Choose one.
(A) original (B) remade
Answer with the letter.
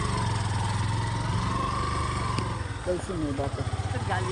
A